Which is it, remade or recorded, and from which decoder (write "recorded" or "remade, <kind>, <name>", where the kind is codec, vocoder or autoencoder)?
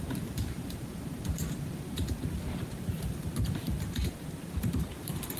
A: remade, vocoder, BigVGAN v2